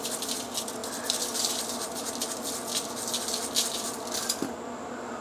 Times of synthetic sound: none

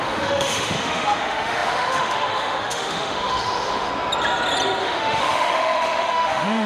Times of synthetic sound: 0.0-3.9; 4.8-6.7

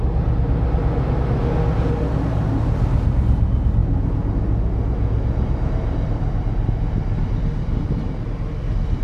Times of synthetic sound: none

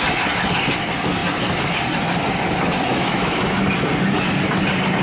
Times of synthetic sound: 2.9-3.4

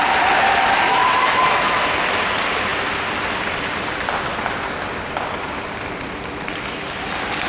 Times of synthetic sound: none

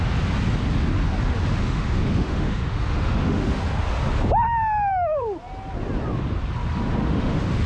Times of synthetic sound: 1.6-3.6; 7.0-7.7